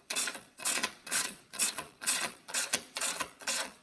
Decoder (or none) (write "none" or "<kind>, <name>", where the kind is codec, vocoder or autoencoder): vocoder, Vocos